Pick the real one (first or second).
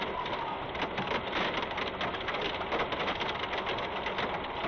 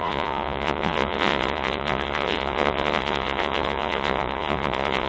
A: first